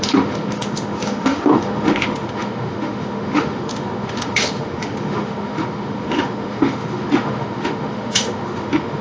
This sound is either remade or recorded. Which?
remade